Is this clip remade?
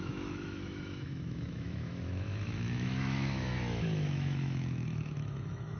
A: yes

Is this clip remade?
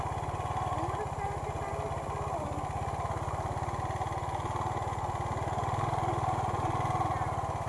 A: no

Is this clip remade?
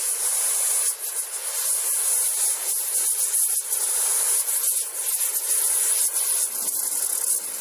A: no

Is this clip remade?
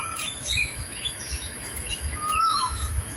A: yes